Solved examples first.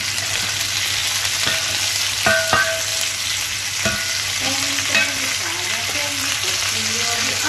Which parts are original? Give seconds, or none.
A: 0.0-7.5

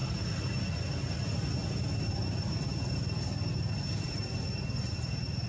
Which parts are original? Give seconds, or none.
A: 0.0-5.5

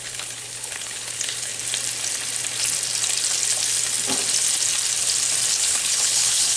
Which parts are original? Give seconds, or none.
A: 1.5-5.5

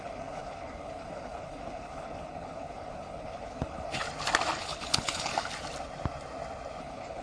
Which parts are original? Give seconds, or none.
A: 4.0-4.6; 5.3-6.8

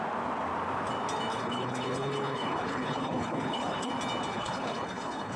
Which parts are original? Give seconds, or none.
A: 0.0-1.3; 3.9-4.3

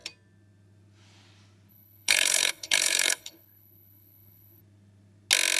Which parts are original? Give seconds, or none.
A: 0.0-1.7; 4.6-5.6

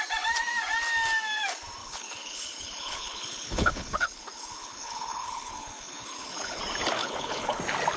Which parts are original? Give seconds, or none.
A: 0.0-1.8; 6.6-7.0; 7.6-8.0

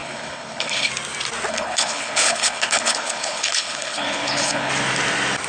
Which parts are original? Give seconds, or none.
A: 0.9-1.5; 4.7-5.5